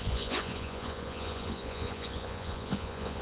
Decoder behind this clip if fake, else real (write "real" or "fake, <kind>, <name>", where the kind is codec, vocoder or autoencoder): fake, vocoder, Vocos